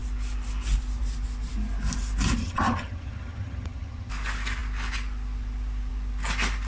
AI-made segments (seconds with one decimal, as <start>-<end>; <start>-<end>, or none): 2.4-4.1

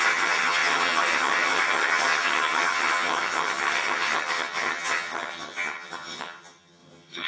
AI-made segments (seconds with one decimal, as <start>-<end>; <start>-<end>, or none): 0.0-7.3